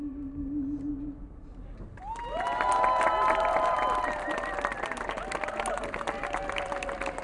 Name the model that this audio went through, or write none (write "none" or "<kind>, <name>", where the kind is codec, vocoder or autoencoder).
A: none